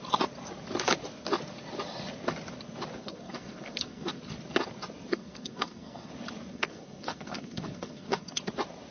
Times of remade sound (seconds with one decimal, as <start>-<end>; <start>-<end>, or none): 3.0-4.2; 5.1-6.1; 6.5-8.4